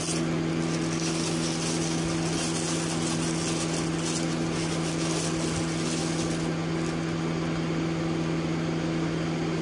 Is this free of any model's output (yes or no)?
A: yes